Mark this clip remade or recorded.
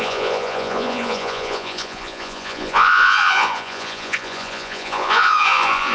remade